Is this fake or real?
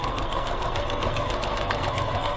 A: fake